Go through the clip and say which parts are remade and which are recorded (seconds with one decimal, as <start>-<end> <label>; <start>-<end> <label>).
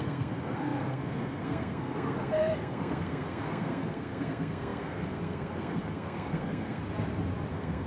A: 0.0-6.8 remade; 6.8-7.5 recorded; 7.5-7.9 remade